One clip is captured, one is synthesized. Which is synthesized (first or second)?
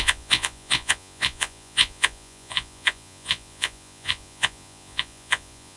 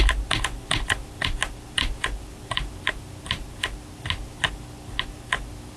first